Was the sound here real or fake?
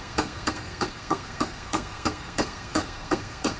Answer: fake